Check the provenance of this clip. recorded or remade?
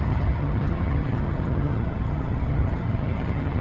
remade